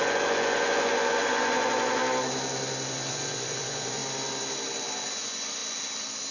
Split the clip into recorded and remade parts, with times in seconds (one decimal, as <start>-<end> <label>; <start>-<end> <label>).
0.0-2.0 remade; 2.0-3.1 recorded; 3.1-4.0 remade; 4.0-5.1 recorded; 5.1-5.6 remade; 5.6-6.3 recorded